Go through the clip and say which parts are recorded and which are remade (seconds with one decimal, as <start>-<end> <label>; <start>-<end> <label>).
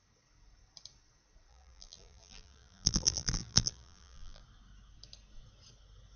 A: 0.0-1.5 recorded; 1.5-4.4 remade; 4.4-6.2 recorded